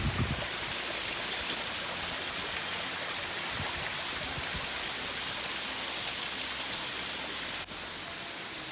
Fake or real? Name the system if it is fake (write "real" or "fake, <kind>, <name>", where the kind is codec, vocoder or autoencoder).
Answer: real